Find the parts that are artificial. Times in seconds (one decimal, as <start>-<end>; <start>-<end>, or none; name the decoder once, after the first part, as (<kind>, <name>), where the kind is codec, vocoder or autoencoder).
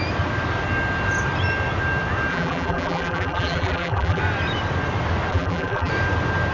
2.3-4.2 (vocoder, BigVGAN v2); 5.3-5.9